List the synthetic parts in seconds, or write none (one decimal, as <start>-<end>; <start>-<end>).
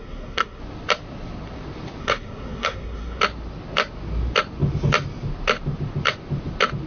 0.0-0.6; 2.0-3.2